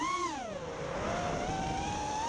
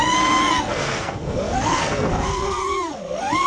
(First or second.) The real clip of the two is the first